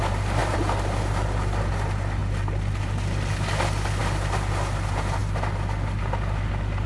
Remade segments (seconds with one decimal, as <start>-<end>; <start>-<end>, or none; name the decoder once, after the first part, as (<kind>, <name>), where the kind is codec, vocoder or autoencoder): 0.4-1.7 (vocoder, BigVGAN v2)